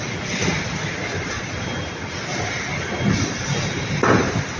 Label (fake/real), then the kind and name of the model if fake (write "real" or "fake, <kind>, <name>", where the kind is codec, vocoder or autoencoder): fake, vocoder, BigVGAN v2